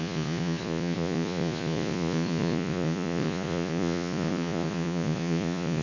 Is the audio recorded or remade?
remade